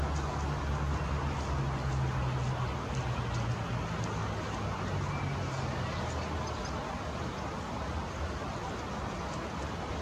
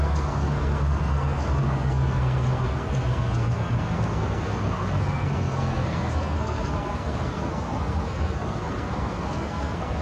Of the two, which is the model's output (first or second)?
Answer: second